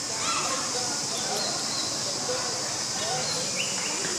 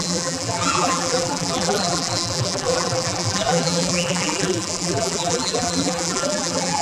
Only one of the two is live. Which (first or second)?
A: first